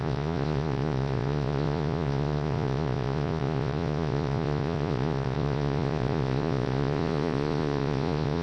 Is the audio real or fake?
fake